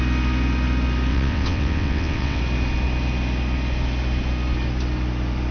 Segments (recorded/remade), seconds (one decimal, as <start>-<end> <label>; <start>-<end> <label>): 0.0-1.1 recorded; 1.1-2.4 remade; 2.4-5.5 recorded